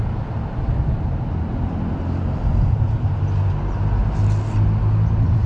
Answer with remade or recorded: recorded